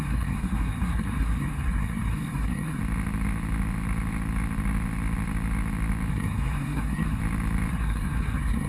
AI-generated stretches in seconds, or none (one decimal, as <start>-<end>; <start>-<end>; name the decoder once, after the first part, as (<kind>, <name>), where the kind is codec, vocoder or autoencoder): 0.0-2.8 (codec, SNAC); 6.1-7.2; 7.7-8.7